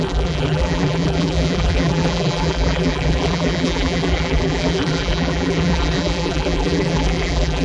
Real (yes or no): no